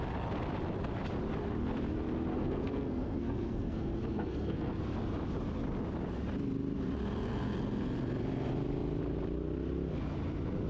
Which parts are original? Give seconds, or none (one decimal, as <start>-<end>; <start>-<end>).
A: 0.0-2.3; 4.8-10.7